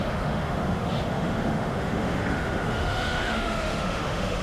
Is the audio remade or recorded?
remade